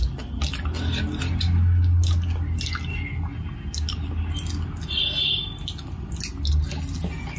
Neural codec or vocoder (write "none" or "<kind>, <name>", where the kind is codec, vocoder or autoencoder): none